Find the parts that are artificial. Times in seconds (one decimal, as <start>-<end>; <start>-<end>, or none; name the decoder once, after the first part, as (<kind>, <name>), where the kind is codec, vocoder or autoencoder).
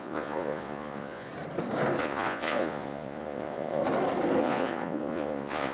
0.0-1.3 (vocoder, Vocos); 2.0-3.8; 4.4-5.7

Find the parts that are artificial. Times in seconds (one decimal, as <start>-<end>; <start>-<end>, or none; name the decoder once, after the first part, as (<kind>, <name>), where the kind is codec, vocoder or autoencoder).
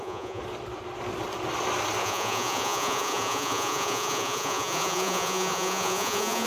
0.0-0.4 (vocoder, Vocos); 2.0-6.5